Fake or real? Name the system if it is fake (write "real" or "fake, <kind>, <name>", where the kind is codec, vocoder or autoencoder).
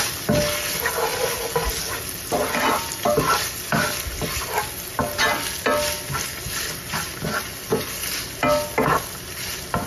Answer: real